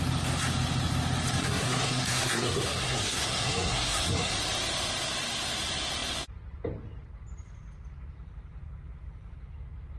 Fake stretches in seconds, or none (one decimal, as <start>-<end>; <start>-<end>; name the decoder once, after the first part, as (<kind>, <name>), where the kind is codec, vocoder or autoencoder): 1.3-4.3 (codec, SNAC)